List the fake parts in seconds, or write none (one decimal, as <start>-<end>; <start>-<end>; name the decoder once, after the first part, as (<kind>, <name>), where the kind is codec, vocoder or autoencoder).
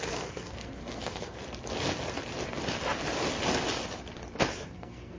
0.0-1.4 (codec, SNAC); 4.5-5.2